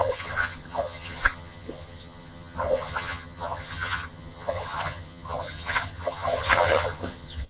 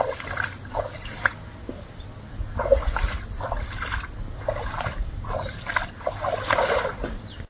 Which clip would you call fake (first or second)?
first